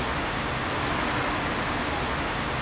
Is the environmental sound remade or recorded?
recorded